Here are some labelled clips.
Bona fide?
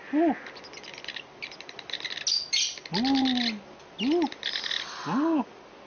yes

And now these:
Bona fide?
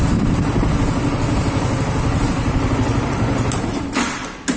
yes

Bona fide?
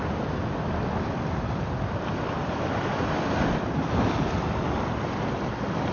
yes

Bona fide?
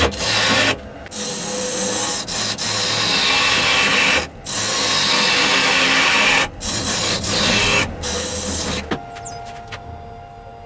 yes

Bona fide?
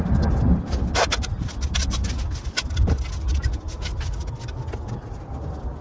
yes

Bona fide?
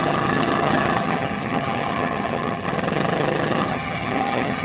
no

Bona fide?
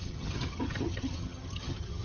no